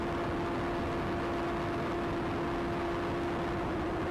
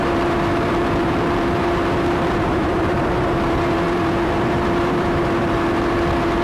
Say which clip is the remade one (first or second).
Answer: second